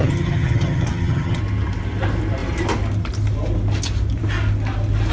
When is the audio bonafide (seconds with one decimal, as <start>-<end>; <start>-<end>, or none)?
1.4-5.1